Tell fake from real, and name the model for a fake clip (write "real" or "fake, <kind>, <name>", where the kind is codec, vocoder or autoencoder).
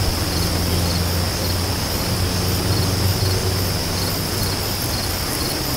real